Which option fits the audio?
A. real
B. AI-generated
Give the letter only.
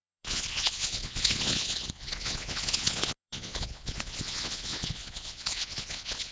B